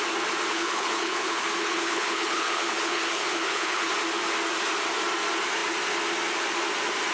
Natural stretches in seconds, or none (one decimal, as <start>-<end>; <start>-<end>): 0.0-0.5; 3.9-7.1